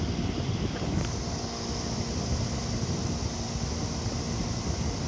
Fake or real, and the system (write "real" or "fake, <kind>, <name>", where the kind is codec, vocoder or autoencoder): real